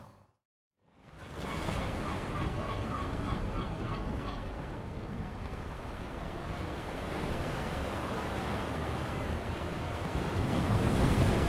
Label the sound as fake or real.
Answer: fake